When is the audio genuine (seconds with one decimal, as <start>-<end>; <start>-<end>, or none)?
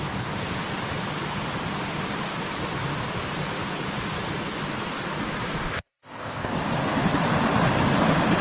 0.0-5.7; 6.5-8.4